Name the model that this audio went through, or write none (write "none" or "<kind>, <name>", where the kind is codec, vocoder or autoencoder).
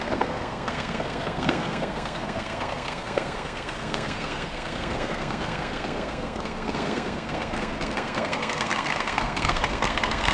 codec, SNAC